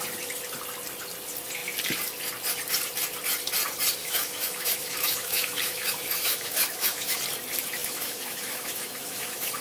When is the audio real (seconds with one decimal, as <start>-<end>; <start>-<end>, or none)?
0.0-4.0; 7.2-7.8